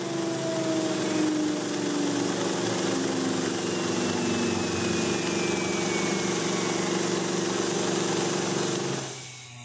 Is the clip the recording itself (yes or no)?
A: yes